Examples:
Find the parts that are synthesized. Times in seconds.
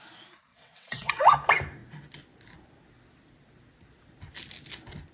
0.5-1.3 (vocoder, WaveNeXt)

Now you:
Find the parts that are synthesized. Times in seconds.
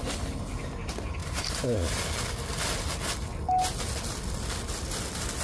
1.2-2.0 (vocoder, BigVGAN v2)